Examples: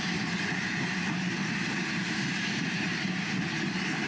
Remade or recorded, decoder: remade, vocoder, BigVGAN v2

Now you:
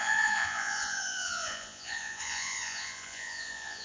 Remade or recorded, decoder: remade, vocoder, Vocos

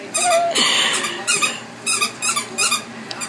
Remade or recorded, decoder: remade, vocoder, BigVGAN v2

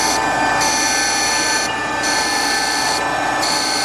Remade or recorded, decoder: recorded